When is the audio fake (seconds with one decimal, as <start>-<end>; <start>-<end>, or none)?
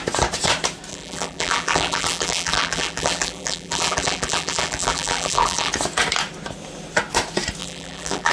0.9-5.7; 7.6-8.3